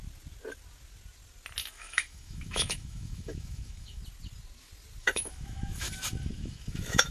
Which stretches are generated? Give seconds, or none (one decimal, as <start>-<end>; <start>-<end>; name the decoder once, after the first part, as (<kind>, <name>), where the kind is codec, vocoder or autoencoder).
1.6-4.0 (autoencoder, DAC-VAE); 5.0-7.1